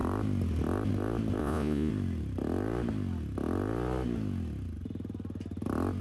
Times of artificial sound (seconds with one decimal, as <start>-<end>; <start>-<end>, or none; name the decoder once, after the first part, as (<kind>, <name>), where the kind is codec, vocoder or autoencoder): 1.4-1.9 (vocoder, Vocos)